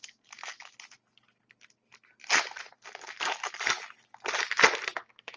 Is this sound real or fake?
real